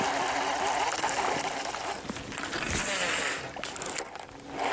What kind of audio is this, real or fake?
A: real